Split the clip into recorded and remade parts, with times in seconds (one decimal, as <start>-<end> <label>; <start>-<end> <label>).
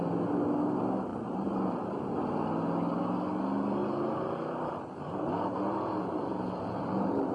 0.0-1.1 recorded; 1.1-1.9 remade; 1.9-3.8 recorded; 3.8-7.3 remade